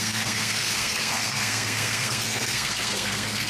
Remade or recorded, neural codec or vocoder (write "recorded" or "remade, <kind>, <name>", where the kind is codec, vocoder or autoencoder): remade, codec, SNAC